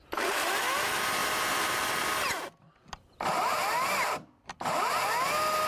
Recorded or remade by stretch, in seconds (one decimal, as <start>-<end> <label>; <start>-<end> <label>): 0.0-5.7 recorded